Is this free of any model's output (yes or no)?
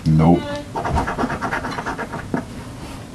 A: no